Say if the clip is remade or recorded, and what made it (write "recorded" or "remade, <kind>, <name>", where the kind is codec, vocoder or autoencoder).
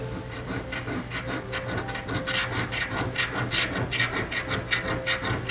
recorded